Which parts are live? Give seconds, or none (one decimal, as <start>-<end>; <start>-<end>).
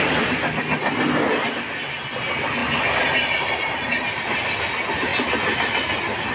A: 0.0-6.3